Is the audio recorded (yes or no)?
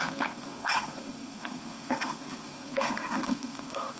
no